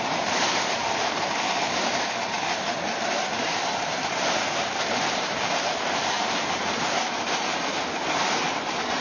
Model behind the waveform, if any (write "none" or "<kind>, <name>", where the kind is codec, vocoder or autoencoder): vocoder, BigVGAN v2